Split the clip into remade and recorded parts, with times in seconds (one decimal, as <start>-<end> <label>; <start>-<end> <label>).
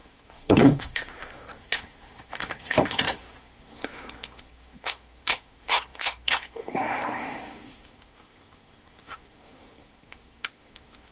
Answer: 0.0-11.1 remade